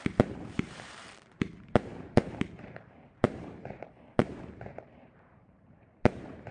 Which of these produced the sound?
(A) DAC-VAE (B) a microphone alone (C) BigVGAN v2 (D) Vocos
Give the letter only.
C